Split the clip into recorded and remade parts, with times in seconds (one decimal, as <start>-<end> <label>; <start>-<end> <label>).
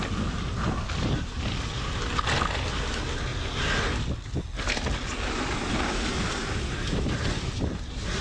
0.0-8.2 recorded